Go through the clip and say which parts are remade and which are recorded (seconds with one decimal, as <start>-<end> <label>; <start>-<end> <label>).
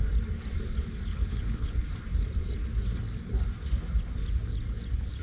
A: 0.0-1.1 recorded; 1.1-1.8 remade; 1.8-5.2 recorded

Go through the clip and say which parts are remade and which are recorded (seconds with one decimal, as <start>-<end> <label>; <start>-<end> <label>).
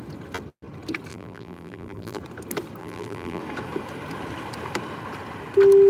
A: 0.0-1.1 recorded; 1.1-2.2 remade; 2.2-2.8 recorded; 2.8-3.4 remade; 3.4-5.9 recorded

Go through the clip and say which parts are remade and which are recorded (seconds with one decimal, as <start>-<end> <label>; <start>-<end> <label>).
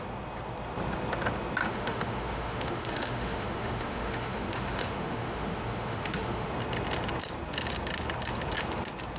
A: 0.0-1.6 recorded; 1.6-6.5 remade; 6.5-9.2 recorded